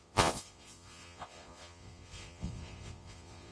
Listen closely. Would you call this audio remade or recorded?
remade